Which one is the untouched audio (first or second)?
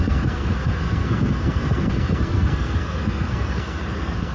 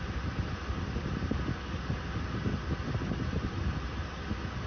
second